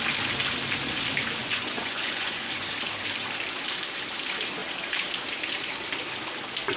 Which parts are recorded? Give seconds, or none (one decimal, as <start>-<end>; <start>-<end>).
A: 0.0-1.4; 2.7-6.8